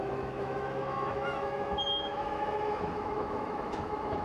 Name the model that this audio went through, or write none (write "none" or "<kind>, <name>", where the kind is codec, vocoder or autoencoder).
autoencoder, DAC-VAE